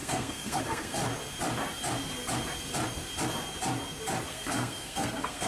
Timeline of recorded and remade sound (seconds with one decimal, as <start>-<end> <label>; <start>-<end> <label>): 0.0-1.0 remade; 1.0-4.3 recorded; 4.3-5.5 remade